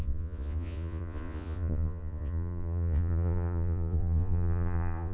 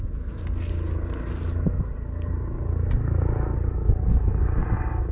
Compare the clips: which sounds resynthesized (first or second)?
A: first